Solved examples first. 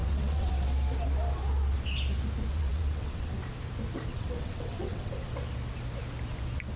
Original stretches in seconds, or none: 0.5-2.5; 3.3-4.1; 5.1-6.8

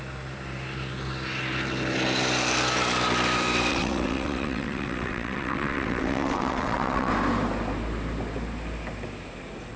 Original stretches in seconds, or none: 0.0-3.7; 7.1-9.8

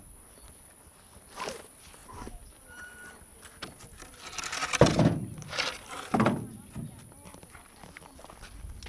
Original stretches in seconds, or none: 0.0-8.9

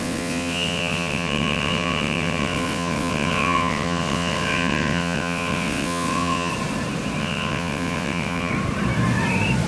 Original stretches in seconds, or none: 6.5-7.2; 8.5-9.7

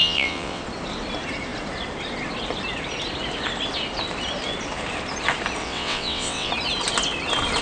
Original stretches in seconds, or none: 0.6-5.6; 6.5-7.6

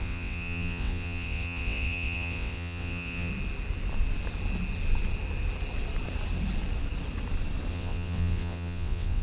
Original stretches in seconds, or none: 3.3-7.7

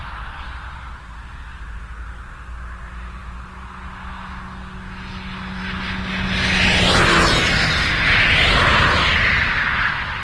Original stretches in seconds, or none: 0.0-10.2

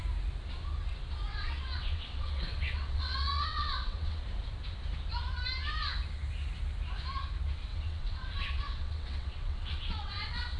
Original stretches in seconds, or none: 0.0-1.3; 4.2-7.7